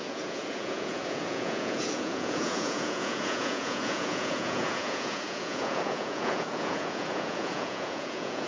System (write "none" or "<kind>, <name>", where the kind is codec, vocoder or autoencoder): vocoder, Vocos